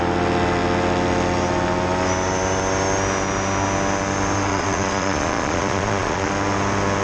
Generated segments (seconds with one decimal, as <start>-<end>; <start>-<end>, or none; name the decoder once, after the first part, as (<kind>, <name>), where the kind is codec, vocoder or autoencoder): 4.5-6.3 (vocoder, Vocos)